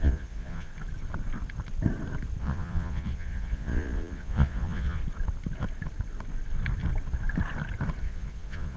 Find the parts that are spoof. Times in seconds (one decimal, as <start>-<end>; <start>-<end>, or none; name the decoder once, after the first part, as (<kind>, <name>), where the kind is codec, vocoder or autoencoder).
0.0-0.7 (vocoder, Vocos); 2.4-5.0; 8.0-8.8

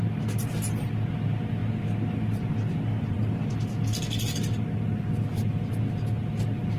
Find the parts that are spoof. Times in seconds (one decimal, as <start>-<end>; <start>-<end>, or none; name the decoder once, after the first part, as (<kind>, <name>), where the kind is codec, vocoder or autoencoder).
none